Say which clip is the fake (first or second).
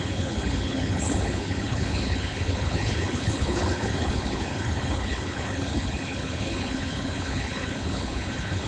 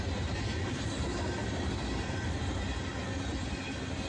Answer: first